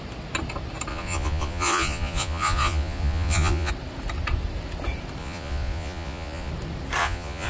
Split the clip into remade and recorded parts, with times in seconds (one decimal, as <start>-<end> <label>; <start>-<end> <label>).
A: 0.0-0.9 recorded; 0.9-3.7 remade; 3.7-5.2 recorded; 5.2-6.5 remade; 6.5-7.0 recorded; 7.0-7.5 remade